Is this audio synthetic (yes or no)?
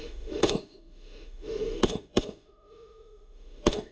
yes